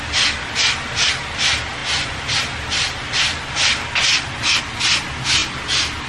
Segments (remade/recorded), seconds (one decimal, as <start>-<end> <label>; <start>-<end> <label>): 0.0-6.1 recorded